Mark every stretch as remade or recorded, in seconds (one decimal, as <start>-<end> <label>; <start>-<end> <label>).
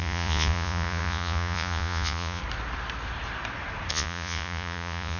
0.0-2.4 remade; 2.4-3.9 recorded; 3.9-5.2 remade